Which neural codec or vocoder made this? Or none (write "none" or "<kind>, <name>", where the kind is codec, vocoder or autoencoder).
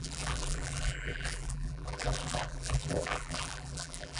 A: vocoder, BigVGAN v2